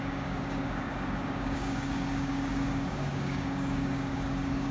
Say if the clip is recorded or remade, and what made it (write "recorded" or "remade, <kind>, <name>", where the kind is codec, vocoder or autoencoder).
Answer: remade, codec, DAC